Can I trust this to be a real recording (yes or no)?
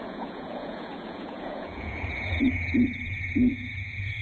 no